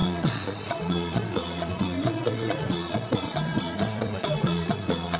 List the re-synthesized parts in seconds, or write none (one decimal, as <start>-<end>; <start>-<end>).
0.0-5.2